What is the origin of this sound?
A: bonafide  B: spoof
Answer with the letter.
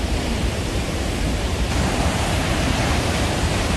B